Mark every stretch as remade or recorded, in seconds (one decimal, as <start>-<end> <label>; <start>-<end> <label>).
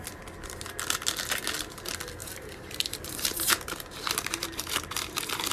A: 0.0-2.2 recorded; 2.2-5.5 remade